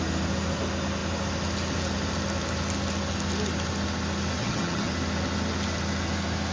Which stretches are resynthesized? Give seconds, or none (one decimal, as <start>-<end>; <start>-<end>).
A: 4.4-4.9